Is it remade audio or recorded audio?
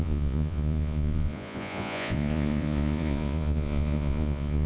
remade